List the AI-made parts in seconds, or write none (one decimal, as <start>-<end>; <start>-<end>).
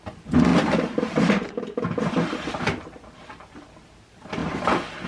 4.4-5.1